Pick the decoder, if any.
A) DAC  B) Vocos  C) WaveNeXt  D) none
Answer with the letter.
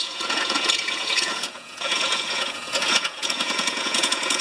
B